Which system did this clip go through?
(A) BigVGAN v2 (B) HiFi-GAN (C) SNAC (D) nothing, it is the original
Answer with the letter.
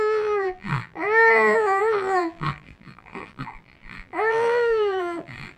A